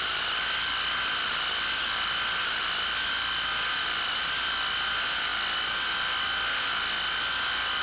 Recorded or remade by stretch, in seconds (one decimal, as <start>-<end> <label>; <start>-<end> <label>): 0.0-7.8 recorded